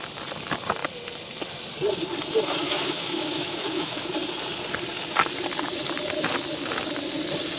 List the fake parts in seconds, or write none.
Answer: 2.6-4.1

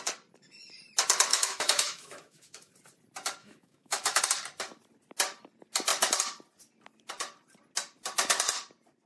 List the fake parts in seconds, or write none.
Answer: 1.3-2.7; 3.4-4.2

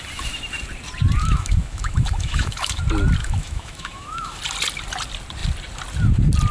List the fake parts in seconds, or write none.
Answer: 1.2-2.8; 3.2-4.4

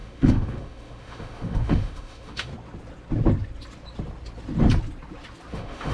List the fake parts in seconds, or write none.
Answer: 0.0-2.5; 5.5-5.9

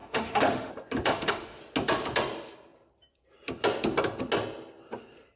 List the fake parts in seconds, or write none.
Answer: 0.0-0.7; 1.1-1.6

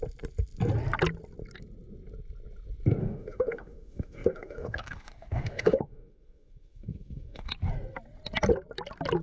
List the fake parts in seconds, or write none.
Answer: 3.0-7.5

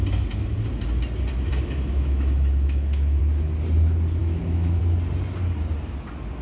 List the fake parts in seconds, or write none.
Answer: 1.5-3.2; 4.2-4.8